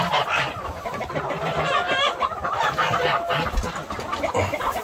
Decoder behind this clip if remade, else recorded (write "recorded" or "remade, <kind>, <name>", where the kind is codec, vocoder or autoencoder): remade, vocoder, BigVGAN v2